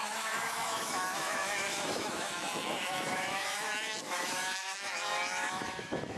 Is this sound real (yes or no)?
no